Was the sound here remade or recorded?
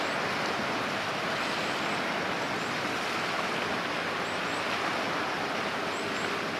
recorded